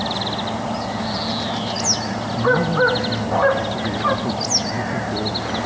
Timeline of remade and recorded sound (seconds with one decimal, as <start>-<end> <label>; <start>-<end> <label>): 0.0-5.7 recorded